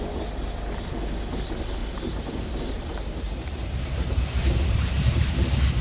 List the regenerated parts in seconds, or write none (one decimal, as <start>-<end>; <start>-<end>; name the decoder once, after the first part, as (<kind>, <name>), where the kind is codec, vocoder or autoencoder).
1.8-5.3 (vocoder, BigVGAN v2)